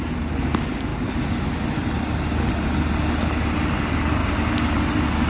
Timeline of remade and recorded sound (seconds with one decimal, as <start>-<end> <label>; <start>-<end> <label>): 0.0-4.2 recorded; 4.2-4.8 remade; 4.8-5.3 recorded